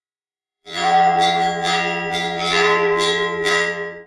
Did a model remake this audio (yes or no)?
yes